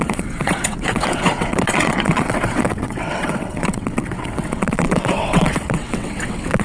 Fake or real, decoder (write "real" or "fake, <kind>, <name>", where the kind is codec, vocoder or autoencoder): fake, vocoder, WaveNeXt